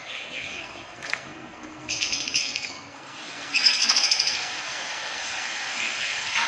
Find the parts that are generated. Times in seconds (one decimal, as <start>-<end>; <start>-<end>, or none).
0.0-6.5